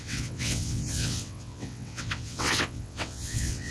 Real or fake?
fake